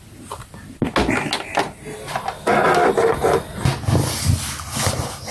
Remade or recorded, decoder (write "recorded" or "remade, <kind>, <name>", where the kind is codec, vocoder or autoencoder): recorded